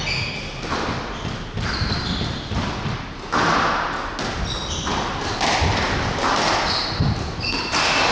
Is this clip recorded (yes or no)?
yes